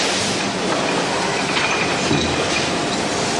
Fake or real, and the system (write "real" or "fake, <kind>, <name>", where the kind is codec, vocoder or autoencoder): real